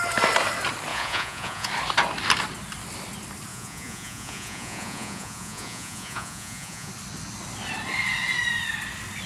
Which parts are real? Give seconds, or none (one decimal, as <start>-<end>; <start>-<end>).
0.0-0.9; 1.7-3.5; 6.9-9.3